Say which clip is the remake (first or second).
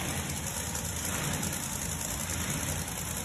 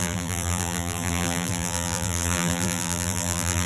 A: second